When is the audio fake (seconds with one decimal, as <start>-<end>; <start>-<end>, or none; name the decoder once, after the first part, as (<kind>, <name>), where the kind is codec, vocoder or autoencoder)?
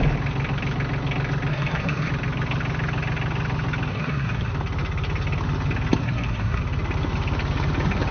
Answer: 1.5-2.1 (codec, SNAC); 3.9-4.5; 6.0-6.6